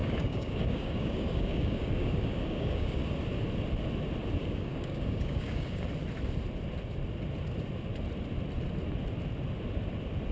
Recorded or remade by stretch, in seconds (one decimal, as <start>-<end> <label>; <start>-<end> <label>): 0.0-3.0 remade; 3.0-4.4 recorded; 4.4-5.8 remade; 5.8-10.3 recorded